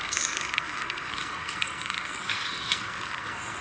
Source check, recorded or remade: remade